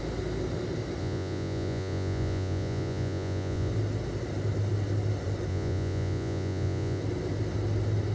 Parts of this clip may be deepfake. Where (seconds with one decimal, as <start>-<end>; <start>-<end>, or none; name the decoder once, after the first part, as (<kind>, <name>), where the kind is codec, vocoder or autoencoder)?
1.0-3.7 (vocoder, Vocos); 5.5-7.0